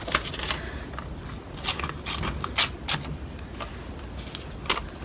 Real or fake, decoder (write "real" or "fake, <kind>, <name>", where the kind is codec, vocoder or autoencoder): real